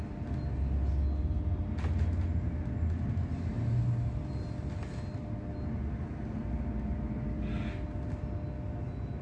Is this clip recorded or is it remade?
recorded